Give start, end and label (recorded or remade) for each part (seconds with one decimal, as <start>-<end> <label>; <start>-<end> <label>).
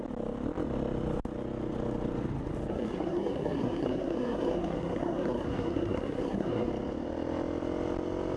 0.0-2.7 recorded; 2.7-6.7 remade; 6.7-8.4 recorded